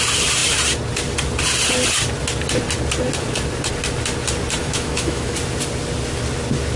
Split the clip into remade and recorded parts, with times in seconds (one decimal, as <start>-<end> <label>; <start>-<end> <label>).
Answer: 0.0-4.6 recorded; 4.6-5.3 remade; 5.3-6.8 recorded